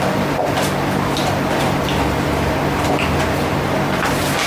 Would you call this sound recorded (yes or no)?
yes